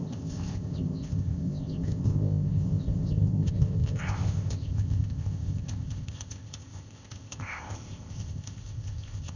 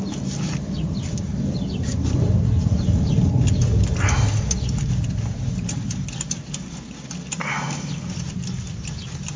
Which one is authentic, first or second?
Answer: second